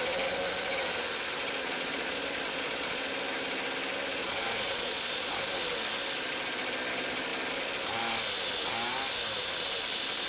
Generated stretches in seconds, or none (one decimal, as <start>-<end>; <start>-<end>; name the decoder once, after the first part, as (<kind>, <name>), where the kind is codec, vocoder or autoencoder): 1.6-3.1 (vocoder, Vocos); 4.2-5.4